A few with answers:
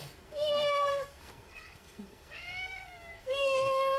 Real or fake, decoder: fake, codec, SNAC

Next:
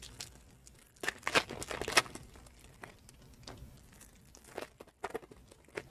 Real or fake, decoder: real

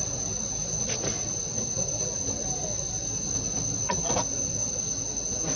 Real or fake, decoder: real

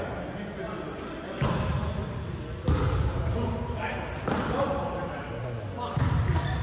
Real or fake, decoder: real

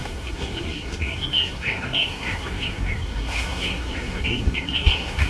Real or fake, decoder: fake, codec, SNAC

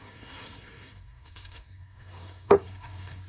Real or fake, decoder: fake, codec, SNAC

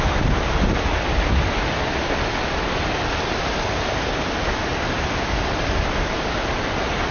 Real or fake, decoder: real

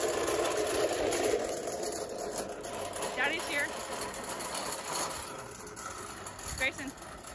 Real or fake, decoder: real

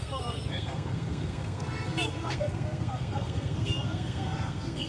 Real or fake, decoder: fake, codec, SNAC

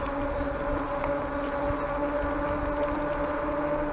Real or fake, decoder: real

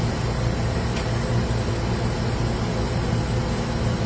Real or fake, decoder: real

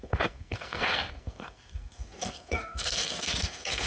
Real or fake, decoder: fake, codec, SNAC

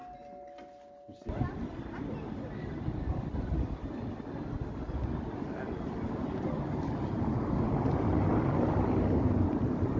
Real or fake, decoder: real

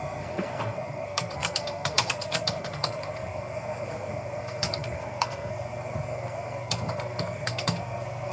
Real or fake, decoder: fake, codec, SNAC